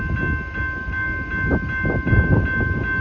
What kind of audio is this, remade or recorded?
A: recorded